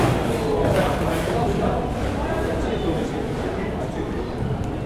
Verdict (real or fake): real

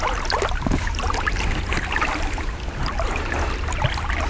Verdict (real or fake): real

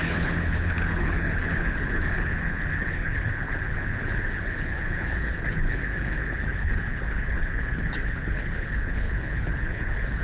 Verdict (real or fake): fake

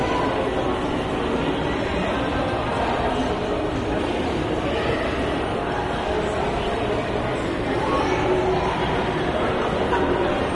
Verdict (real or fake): real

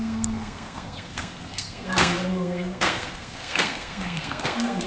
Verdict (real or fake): fake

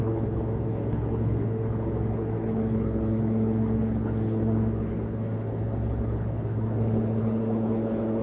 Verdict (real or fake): fake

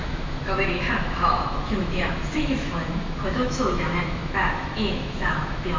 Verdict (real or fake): fake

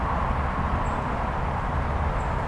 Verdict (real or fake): real